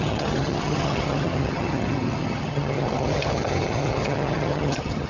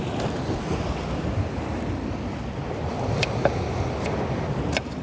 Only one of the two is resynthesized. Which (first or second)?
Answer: first